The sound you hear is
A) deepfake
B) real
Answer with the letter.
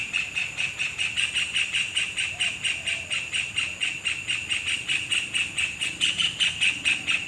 B